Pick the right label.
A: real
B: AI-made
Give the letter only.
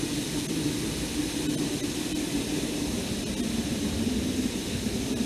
A